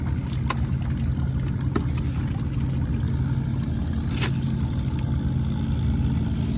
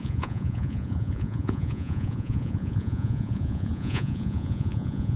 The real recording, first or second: first